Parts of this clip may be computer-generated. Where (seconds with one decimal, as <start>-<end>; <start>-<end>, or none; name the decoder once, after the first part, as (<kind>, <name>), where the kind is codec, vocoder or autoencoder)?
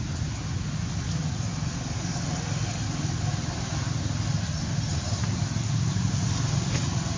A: none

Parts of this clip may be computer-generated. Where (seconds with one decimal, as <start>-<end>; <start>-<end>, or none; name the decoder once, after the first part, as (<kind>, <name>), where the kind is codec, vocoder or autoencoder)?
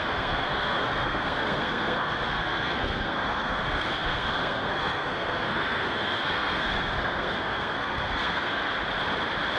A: 0.0-8.6 (codec, SNAC)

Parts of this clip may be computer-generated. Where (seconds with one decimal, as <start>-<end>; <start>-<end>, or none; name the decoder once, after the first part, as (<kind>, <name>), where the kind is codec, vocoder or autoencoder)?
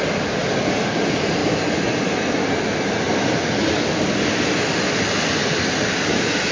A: none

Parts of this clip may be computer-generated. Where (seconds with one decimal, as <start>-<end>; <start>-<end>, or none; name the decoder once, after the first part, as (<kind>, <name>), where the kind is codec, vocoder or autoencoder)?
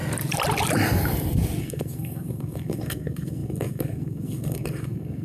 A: 1.6-5.2 (codec, SNAC)